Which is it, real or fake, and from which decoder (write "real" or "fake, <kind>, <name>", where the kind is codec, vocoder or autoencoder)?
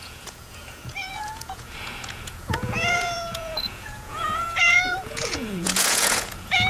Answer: fake, vocoder, Vocos